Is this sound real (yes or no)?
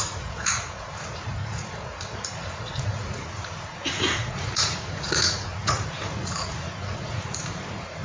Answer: no